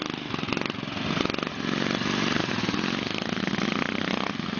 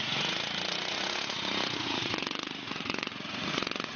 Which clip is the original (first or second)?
first